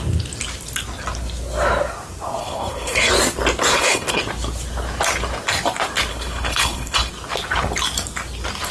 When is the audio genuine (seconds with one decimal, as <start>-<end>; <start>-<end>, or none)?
0.0-2.4; 3.1-3.7; 4.2-6.1; 7.1-8.7